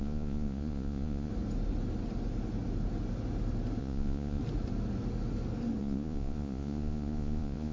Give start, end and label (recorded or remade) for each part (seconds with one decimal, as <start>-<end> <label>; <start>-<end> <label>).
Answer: 0.0-1.3 remade; 1.3-3.8 recorded; 3.8-4.4 remade; 4.4-5.8 recorded; 5.8-7.7 remade